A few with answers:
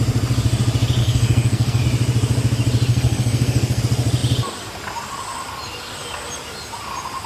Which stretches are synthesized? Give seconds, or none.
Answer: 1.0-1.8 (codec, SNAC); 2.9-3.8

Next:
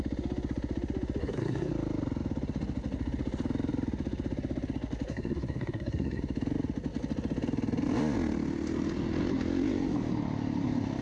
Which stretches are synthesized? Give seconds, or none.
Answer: 1.2-1.7 (codec, SNAC); 5.1-6.2

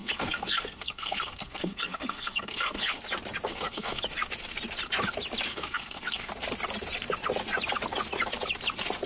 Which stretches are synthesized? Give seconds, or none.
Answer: 0.0-3.0 (codec, SNAC); 3.5-4.0; 5.5-6.3

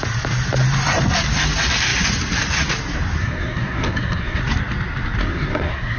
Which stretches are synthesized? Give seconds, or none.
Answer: 3.2-4.4 (codec, SNAC); 5.2-6.0